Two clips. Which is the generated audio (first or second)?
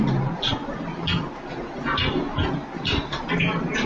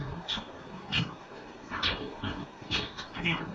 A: second